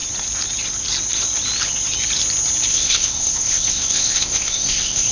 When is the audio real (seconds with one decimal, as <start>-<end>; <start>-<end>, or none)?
0.0-2.7